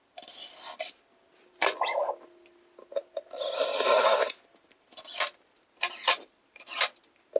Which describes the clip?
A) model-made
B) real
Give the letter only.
B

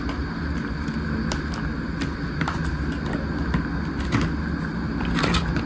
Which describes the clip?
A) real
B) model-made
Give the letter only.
A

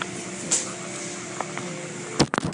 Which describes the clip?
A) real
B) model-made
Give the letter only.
A